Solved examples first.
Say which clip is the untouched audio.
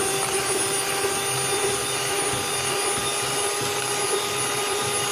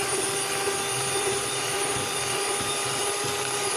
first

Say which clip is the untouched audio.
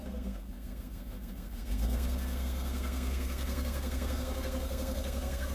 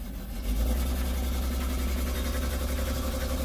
second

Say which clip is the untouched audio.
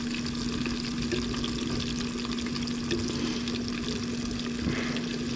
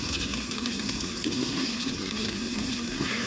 first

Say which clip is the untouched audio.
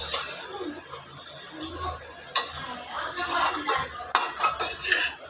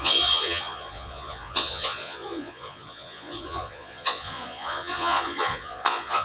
first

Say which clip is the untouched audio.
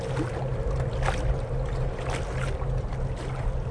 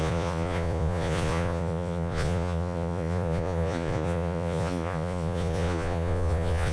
first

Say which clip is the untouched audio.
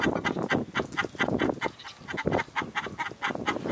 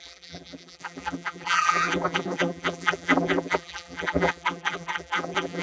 first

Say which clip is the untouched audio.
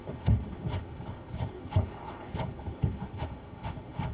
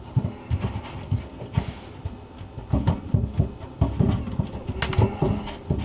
second